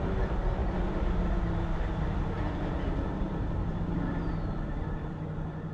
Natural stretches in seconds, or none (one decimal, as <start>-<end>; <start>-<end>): 0.0-5.7